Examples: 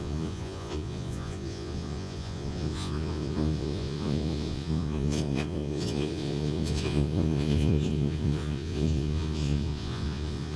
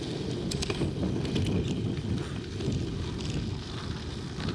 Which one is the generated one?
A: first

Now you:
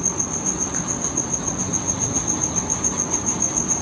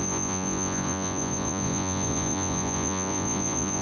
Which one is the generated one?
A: second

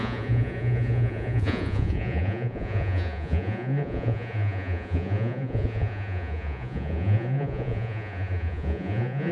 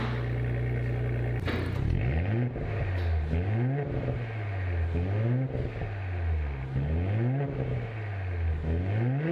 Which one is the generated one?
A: first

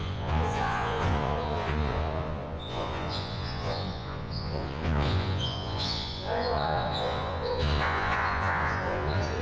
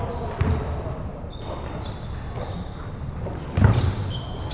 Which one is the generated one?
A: first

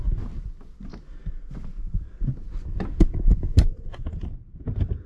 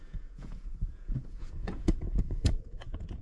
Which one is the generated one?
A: second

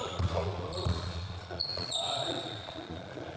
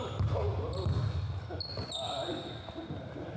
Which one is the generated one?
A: first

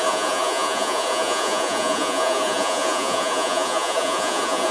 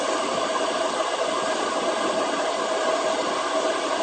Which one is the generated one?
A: first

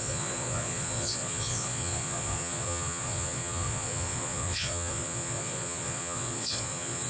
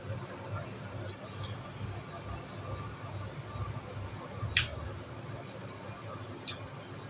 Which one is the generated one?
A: first